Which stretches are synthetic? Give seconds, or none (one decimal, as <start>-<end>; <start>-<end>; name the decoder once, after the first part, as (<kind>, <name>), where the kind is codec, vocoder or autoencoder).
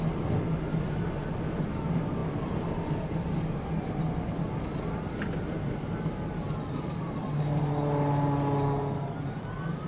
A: none